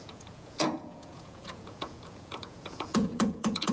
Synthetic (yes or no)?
yes